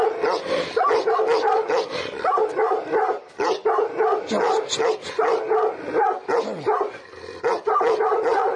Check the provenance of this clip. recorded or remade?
recorded